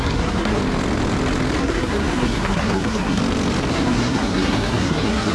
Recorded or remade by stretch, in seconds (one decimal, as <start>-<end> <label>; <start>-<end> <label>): 0.0-0.6 remade; 0.6-1.6 recorded; 1.6-3.2 remade; 3.2-3.7 recorded; 3.7-5.3 remade